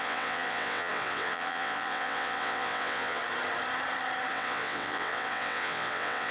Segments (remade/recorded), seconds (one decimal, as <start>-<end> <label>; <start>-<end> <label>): 0.0-3.2 remade; 3.2-4.3 recorded; 4.3-6.3 remade